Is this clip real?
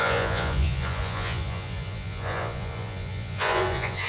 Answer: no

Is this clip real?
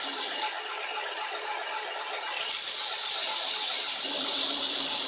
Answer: yes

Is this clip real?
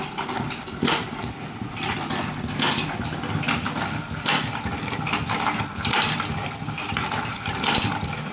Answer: yes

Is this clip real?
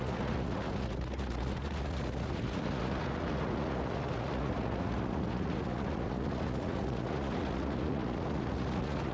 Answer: no